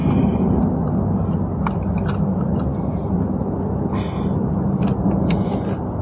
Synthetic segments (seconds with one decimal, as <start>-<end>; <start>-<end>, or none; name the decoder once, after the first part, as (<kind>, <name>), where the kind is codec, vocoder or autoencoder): none